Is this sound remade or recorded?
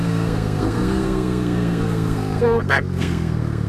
remade